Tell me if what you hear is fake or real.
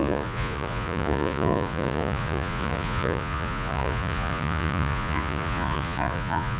fake